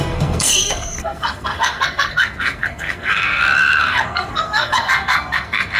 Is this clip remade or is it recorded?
remade